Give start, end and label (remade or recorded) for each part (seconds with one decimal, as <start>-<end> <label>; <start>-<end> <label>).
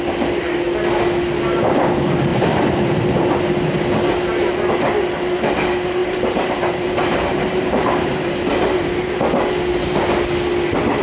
0.0-2.3 recorded; 2.3-3.1 remade; 3.1-6.0 recorded; 6.0-9.0 remade; 9.0-11.0 recorded